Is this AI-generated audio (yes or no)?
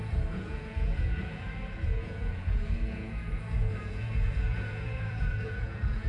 yes